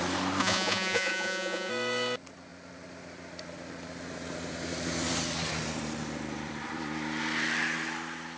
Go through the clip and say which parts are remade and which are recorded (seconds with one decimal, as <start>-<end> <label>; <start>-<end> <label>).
0.0-0.4 recorded; 0.4-1.7 remade; 1.7-8.4 recorded